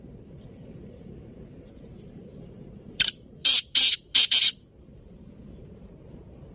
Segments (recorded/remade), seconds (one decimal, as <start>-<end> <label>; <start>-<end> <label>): 0.0-6.5 remade